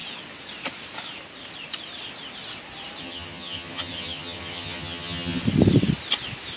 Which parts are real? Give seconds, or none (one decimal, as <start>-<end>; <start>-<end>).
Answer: 0.0-3.0; 5.4-6.6